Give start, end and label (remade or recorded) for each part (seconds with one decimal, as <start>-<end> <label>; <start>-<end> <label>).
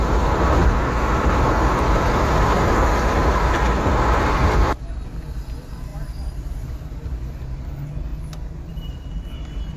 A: 0.0-9.8 recorded